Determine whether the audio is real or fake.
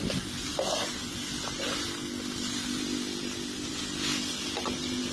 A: real